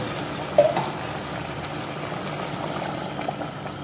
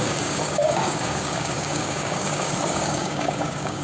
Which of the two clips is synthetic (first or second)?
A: second